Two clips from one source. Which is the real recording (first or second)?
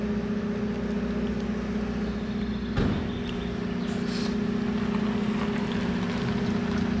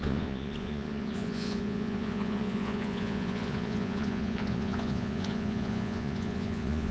first